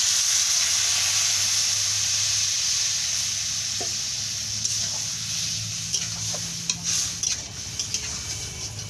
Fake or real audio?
real